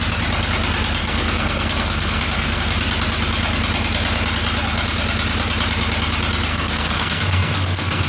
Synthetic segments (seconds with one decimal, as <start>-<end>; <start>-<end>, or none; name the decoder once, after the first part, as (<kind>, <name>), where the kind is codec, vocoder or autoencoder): 1.0-2.6 (codec, SNAC); 6.5-8.1